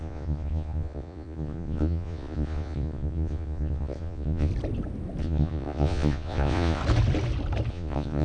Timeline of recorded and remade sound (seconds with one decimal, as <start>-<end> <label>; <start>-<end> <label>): 0.0-4.5 remade; 4.5-5.2 recorded; 5.2-6.8 remade; 6.8-7.7 recorded; 7.7-8.2 remade